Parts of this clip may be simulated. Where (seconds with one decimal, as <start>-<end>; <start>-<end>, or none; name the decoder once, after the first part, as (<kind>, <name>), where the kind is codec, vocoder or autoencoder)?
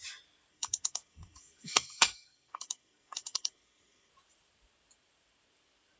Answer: 0.5-4.1 (codec, SNAC)